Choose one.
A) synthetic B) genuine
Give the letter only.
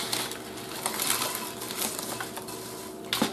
B